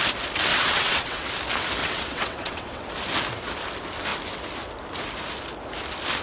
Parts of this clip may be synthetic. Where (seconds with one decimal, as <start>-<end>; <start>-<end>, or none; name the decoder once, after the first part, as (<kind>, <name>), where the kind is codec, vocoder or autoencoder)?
0.5-1.3 (vocoder, WaveNeXt); 1.8-2.9